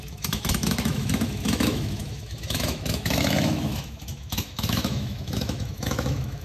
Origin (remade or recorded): remade